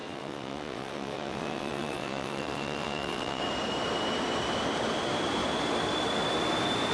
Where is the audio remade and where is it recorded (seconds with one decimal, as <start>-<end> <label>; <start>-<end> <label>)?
0.0-3.4 remade; 3.4-6.9 recorded